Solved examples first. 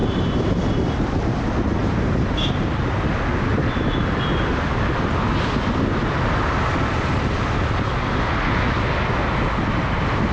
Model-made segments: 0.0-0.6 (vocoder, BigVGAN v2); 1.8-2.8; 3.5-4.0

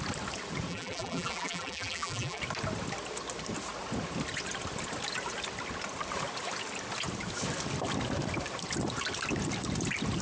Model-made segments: 0.7-2.4 (vocoder, BigVGAN v2)

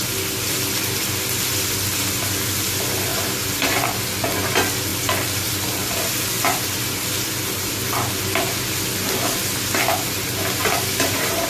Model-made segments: none